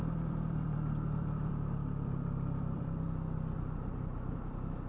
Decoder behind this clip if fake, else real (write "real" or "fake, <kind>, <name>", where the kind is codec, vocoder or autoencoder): fake, vocoder, BigVGAN v2